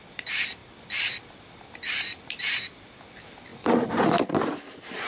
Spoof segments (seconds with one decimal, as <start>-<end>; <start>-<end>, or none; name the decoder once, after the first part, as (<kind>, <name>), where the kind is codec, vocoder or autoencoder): 0.0-0.6 (vocoder, BigVGAN v2); 1.6-5.1